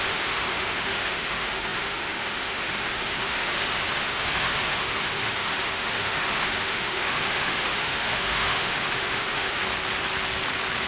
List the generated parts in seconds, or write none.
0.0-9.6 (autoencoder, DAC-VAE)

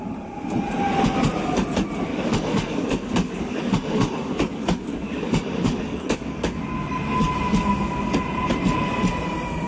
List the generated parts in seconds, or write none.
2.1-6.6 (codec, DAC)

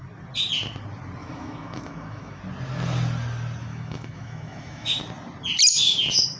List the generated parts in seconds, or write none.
1.2-2.4 (autoencoder, DAC-VAE); 3.7-5.0

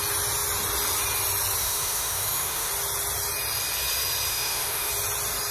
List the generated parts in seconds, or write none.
1.6-2.7 (autoencoder, DAC-VAE); 4.3-4.9

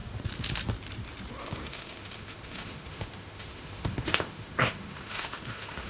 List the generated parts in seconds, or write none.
1.4-5.9 (autoencoder, DAC-VAE)